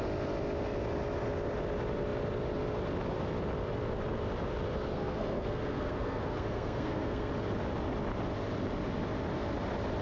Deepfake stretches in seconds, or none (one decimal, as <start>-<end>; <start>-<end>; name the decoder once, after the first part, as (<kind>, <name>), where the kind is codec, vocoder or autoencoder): 4.9-7.3 (codec, SNAC)

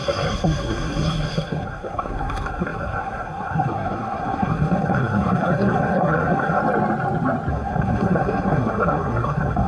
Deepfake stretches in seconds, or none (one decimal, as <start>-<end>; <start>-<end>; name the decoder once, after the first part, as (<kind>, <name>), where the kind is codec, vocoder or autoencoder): 0.0-6.6 (codec, SNAC); 7.5-9.7

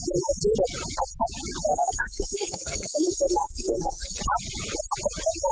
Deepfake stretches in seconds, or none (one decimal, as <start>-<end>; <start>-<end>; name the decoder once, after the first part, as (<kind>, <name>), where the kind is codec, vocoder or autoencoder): 1.7-4.2 (codec, SNAC)

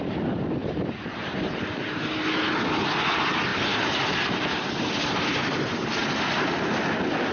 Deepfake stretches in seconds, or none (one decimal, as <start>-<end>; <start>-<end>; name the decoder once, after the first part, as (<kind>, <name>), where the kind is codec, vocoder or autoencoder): 0.6-2.0 (vocoder, BigVGAN v2); 3.5-6.0

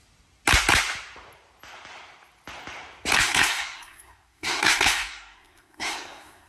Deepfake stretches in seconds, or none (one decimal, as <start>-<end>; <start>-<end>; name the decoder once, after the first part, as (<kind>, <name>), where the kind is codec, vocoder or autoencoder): 3.2-6.5 (codec, SNAC)

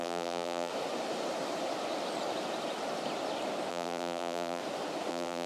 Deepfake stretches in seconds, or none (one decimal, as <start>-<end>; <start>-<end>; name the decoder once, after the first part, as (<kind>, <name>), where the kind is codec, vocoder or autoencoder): 0.0-0.7 (vocoder, BigVGAN v2); 3.7-4.6; 5.1-5.5

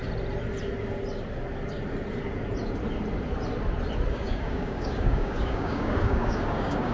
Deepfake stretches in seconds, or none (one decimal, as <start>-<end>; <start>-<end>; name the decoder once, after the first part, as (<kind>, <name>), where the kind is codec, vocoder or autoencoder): 4.1-6.9 (codec, DAC)

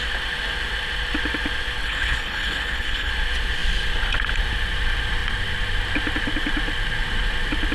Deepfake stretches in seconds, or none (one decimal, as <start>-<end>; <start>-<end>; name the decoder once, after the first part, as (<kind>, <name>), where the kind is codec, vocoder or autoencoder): 1.8-3.1 (codec, HILCodec)